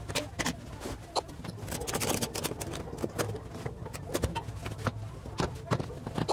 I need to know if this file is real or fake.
real